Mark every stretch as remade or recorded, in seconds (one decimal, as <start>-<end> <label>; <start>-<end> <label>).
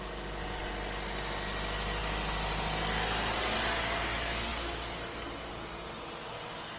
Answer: 0.0-6.8 recorded